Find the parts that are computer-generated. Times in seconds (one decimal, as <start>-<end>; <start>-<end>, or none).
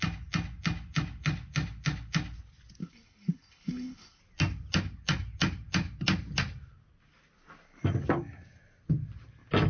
2.8-4.2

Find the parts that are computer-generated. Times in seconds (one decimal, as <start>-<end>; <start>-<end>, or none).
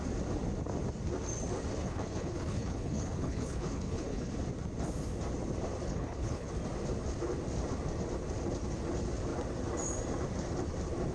1.8-4.3; 5.9-6.5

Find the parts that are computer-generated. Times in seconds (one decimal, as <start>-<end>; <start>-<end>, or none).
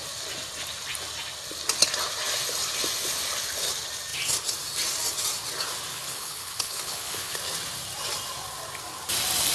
5.9-7.4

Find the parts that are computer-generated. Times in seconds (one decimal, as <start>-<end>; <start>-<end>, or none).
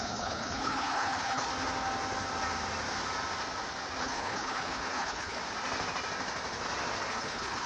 0.0-1.5; 4.0-5.4; 7.1-7.7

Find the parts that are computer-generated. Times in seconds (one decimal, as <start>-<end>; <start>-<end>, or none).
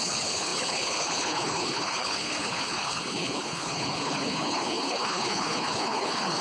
0.0-6.4